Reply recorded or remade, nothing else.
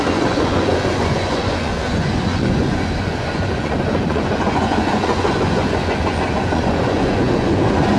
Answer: remade